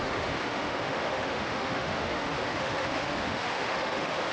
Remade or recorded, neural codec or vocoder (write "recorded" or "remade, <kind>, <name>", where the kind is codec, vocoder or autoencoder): remade, autoencoder, DAC-VAE